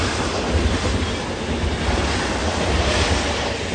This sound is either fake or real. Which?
real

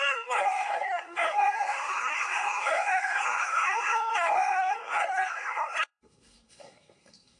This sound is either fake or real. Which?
fake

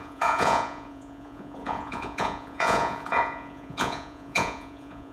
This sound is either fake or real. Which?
fake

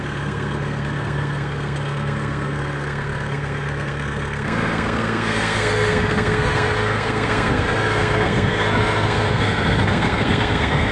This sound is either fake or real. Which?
fake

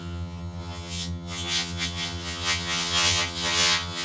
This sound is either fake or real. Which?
fake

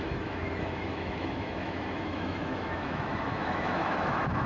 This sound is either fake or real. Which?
fake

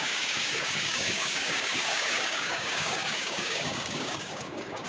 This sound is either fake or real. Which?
fake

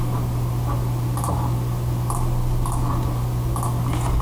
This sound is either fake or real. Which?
real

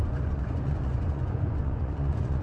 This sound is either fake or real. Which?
fake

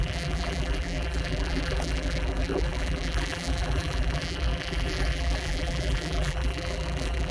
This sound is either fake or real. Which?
fake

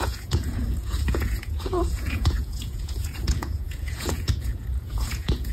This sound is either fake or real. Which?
fake